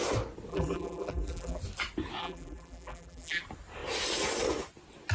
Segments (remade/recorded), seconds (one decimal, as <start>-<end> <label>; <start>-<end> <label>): 0.0-0.5 recorded; 0.5-1.6 remade; 1.6-2.2 recorded; 2.2-3.4 remade; 3.4-5.1 recorded